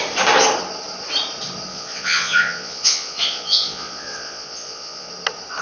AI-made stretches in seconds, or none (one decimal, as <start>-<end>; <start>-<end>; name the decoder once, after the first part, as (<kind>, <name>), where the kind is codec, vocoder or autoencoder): 1.7-5.1 (vocoder, Vocos)

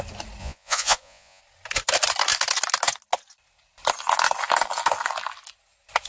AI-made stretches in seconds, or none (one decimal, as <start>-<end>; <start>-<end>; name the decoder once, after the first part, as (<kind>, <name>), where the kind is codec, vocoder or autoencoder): 0.4-1.4 (vocoder, Vocos)

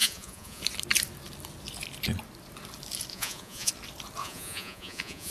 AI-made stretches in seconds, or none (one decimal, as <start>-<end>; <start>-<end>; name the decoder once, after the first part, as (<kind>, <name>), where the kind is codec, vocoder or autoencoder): 0.0-0.6 (vocoder, Vocos); 3.1-3.7; 4.2-5.3

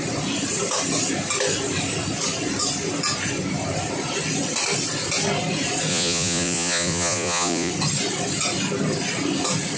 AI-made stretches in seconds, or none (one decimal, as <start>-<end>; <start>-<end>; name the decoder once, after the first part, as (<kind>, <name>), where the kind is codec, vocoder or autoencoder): 5.9-7.7 (vocoder, Vocos)

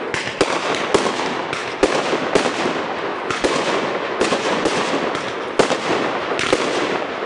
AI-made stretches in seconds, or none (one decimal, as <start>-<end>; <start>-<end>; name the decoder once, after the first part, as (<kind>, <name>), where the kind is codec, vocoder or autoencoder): 3.1-4.9 (vocoder, Vocos)

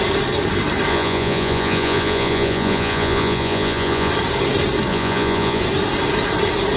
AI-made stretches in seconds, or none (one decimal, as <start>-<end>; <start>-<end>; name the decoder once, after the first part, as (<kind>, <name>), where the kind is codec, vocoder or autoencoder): 0.9-4.1 (vocoder, Vocos); 4.9-5.6